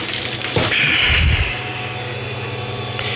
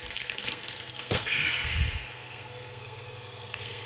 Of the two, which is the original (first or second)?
first